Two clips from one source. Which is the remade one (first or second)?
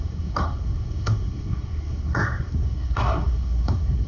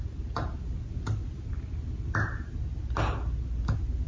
first